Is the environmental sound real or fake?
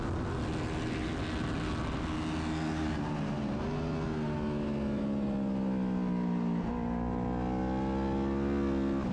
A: real